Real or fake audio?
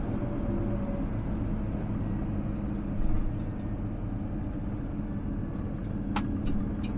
real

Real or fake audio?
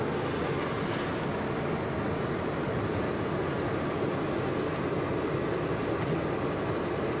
real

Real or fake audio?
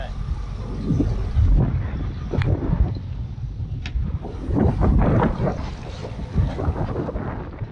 real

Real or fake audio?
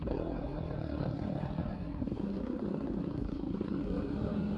fake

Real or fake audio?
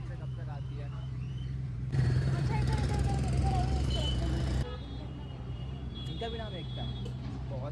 fake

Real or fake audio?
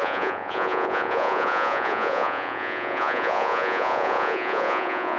fake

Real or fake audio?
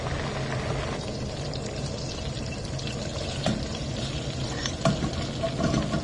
real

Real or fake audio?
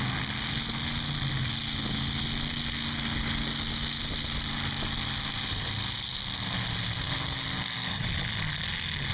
real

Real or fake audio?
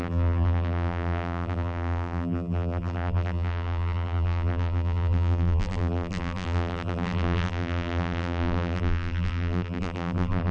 fake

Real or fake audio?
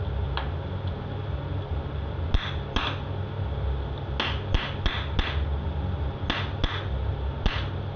real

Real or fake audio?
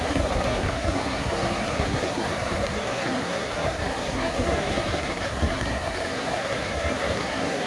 fake